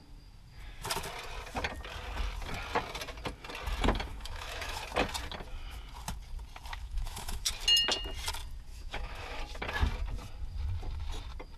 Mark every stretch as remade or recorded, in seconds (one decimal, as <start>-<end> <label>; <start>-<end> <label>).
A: 0.0-4.1 recorded; 4.1-4.8 remade; 4.8-6.8 recorded; 6.8-7.5 remade; 7.5-8.7 recorded; 8.7-9.4 remade; 9.4-11.6 recorded